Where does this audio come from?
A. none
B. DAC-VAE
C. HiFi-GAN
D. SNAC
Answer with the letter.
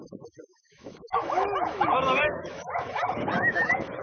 B